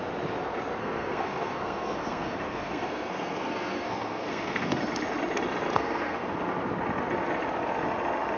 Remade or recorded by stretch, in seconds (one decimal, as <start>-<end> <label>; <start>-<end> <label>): 0.0-0.8 recorded; 0.8-4.8 remade; 4.8-5.7 recorded; 5.7-6.3 remade; 6.3-8.4 recorded